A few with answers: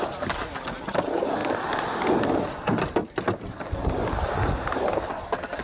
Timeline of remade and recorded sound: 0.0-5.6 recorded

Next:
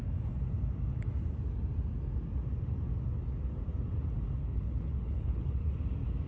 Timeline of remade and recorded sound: 0.0-4.4 recorded; 4.4-5.7 remade; 5.7-6.3 recorded

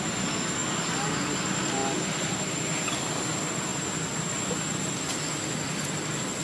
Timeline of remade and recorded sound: 0.0-6.4 recorded

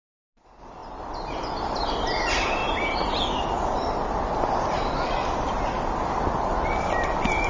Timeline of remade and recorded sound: 0.0-0.8 recorded; 0.8-1.4 remade; 1.4-2.6 recorded; 2.6-3.2 remade; 3.2-7.5 recorded

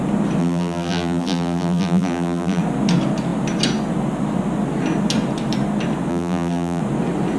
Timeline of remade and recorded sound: 0.0-0.4 recorded; 0.4-2.6 remade; 2.6-6.1 recorded; 6.1-6.8 remade; 6.8-7.4 recorded